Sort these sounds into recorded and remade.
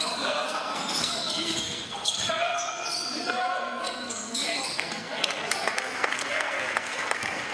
remade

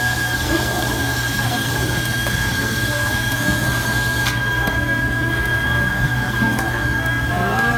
remade